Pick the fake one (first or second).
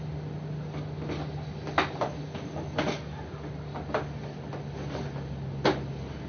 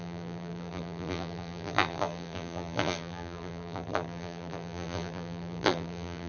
second